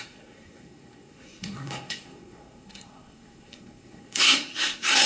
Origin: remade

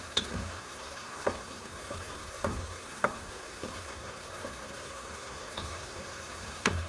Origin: remade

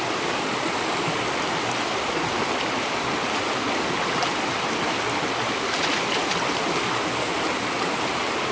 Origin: recorded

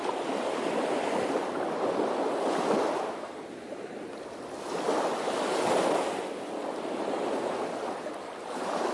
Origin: recorded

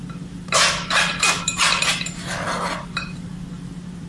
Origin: recorded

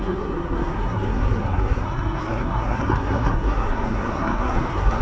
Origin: remade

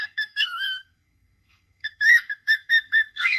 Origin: remade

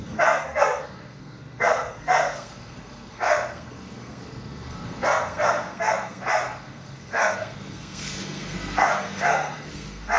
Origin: remade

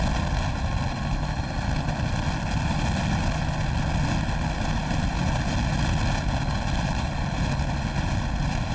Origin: recorded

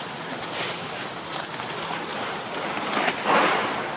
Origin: recorded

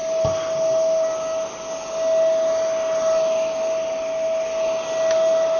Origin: recorded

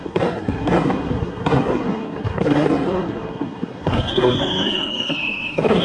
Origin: remade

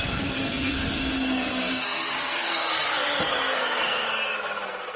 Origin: remade